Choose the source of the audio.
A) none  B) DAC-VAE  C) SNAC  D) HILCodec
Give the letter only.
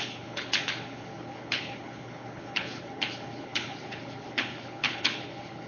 D